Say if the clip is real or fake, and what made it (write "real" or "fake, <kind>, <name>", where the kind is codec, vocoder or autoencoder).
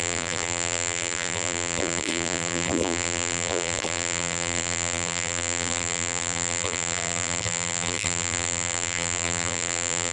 fake, vocoder, BigVGAN v2